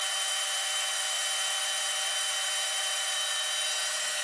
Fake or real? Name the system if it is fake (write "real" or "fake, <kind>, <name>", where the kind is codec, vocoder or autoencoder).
fake, vocoder, BigVGAN v2